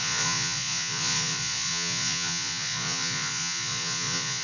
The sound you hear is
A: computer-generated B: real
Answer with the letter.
A